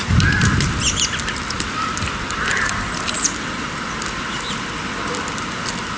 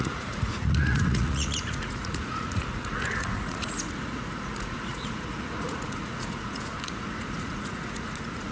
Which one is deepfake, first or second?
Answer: second